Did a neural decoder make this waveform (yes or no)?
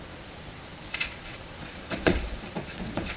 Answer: yes